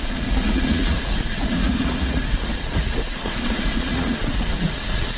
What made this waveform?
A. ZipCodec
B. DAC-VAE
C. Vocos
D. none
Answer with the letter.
C